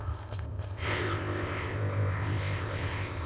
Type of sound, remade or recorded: remade